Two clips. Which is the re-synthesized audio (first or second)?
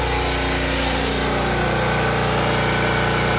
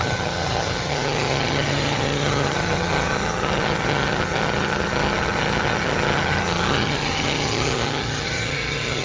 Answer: second